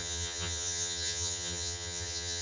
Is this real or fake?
fake